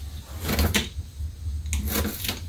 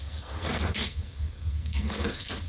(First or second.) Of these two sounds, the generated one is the second